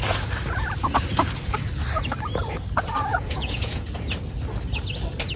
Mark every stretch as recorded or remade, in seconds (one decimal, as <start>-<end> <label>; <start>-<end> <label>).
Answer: 0.0-3.1 recorded; 3.1-3.9 remade; 3.9-5.4 recorded